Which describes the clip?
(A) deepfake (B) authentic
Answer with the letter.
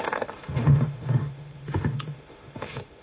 A